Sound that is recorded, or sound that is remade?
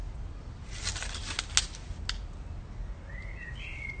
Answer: recorded